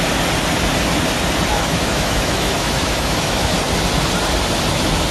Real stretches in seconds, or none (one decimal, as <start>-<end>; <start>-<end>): 0.0-1.5; 3.5-5.1